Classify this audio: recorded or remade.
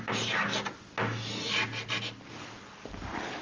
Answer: recorded